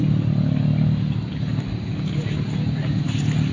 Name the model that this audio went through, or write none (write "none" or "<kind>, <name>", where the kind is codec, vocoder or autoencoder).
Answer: none